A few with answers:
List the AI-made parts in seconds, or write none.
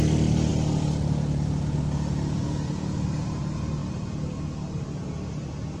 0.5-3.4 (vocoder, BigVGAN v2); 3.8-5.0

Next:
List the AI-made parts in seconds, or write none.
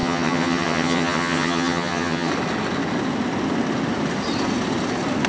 0.0-2.3 (vocoder, HiFi-GAN)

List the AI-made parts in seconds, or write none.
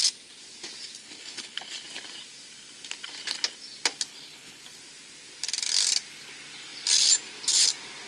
1.0-1.8 (codec, HILCodec); 4.1-4.6